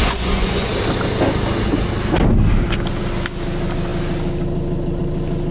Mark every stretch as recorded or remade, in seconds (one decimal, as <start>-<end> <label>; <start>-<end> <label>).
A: 0.0-0.7 remade; 0.7-5.5 recorded